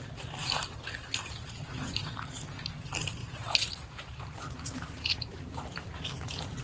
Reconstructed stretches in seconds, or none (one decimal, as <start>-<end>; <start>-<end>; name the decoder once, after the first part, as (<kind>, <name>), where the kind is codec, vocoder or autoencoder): 0.4-2.3 (vocoder, BigVGAN v2); 3.2-6.0

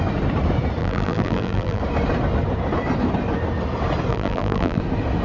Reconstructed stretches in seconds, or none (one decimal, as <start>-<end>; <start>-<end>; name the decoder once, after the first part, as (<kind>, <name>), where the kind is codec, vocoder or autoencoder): 0.8-1.8 (vocoder, BigVGAN v2); 4.1-4.8